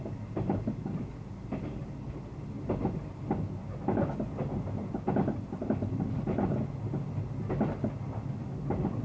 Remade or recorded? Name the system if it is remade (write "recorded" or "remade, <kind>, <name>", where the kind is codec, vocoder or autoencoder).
recorded